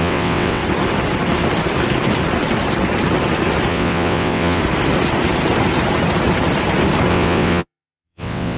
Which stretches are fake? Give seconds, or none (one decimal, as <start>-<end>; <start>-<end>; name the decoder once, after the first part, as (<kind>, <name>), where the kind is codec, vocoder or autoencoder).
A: 0.0-0.6 (vocoder, WaveNeXt); 3.7-4.6; 7.1-8.6